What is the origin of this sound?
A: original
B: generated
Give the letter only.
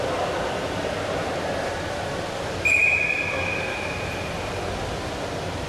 A